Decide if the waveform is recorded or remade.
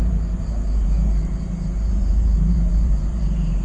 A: remade